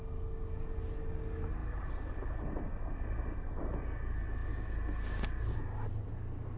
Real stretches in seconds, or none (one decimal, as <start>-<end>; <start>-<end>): 0.0-1.6; 2.1-6.6